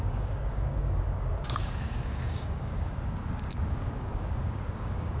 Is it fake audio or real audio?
fake